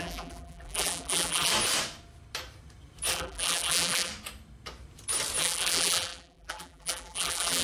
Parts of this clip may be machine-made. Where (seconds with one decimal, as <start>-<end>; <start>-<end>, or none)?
0.0-1.5; 3.1-4.1; 5.4-7.6

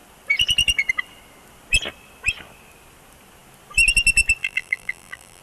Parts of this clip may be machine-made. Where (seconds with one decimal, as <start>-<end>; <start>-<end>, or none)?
4.4-5.4

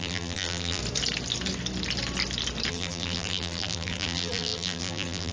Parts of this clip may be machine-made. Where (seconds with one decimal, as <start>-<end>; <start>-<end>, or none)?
0.0-0.8; 2.7-5.3

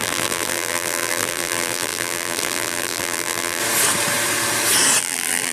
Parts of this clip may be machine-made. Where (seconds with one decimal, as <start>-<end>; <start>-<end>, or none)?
0.0-3.6; 5.0-5.5

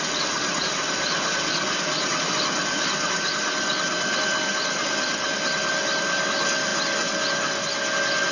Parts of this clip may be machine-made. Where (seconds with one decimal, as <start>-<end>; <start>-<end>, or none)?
none

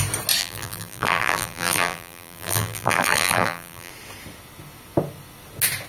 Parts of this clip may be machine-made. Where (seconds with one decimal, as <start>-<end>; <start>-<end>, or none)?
0.4-3.9